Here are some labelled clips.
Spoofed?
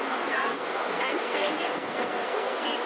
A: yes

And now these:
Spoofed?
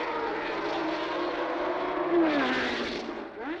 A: no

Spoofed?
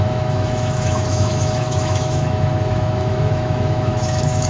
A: yes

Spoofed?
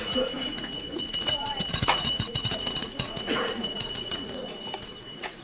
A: yes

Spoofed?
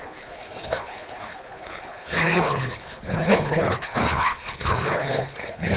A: yes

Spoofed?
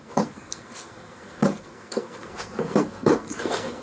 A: yes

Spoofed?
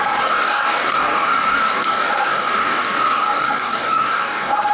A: yes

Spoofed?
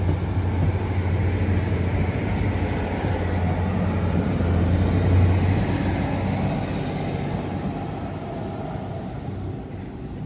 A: no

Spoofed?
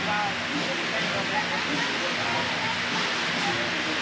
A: no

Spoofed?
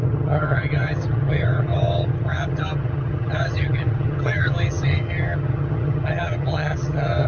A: yes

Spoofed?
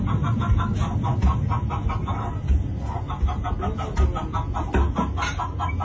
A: no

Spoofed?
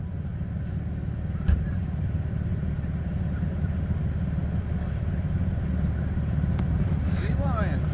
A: no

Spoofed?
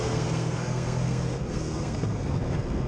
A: yes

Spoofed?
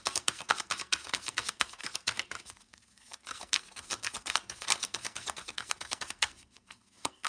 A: yes